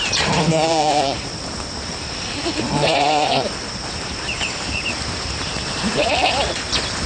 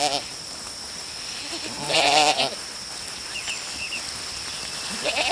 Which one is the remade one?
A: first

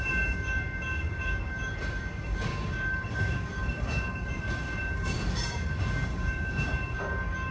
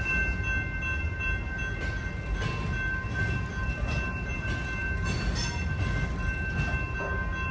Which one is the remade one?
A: first